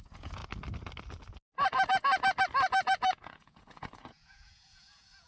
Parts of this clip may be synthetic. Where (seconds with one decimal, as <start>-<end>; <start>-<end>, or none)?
0.0-0.4; 3.1-5.3